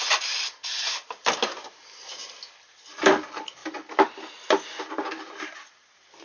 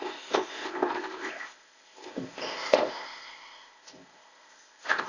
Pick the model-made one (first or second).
second